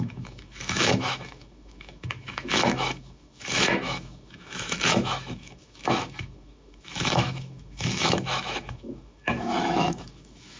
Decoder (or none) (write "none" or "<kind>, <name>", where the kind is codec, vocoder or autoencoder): autoencoder, DAC-VAE